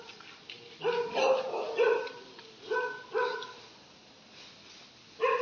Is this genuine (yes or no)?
yes